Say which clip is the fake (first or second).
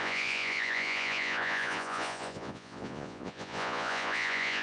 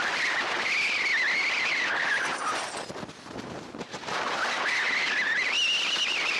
first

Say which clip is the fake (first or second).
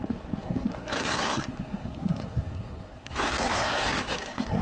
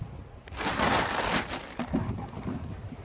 first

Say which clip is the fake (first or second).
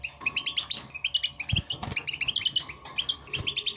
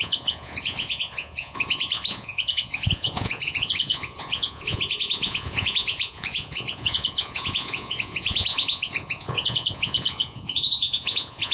second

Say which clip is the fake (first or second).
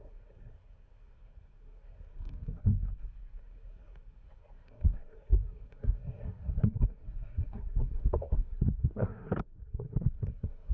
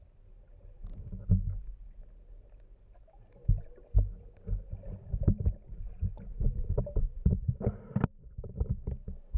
first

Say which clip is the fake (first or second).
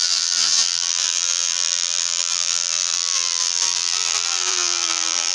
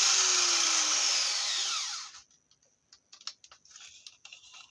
first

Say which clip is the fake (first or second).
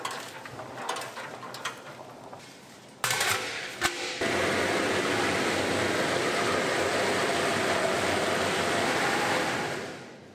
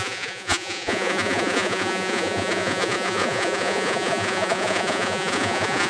second